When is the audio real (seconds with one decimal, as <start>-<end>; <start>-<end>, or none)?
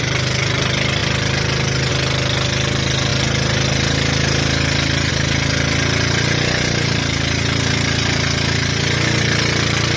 0.0-10.0